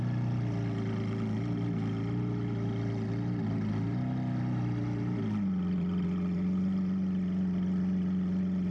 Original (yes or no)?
yes